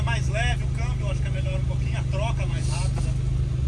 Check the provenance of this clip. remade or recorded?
recorded